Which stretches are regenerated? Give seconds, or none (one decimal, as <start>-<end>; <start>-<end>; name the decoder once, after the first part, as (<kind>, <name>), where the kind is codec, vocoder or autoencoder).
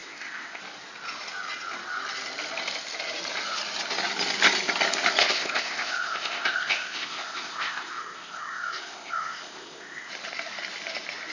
0.0-0.6 (codec, ZipCodec); 5.2-10.1